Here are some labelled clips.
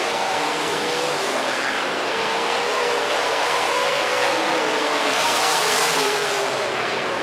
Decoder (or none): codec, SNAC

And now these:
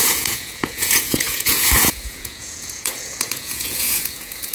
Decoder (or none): vocoder, Vocos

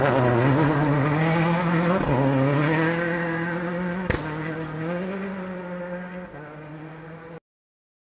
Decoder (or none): none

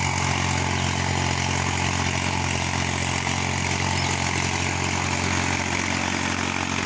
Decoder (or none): none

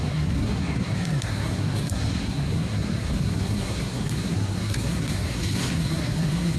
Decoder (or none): codec, SNAC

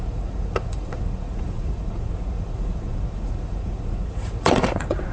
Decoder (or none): vocoder, Vocos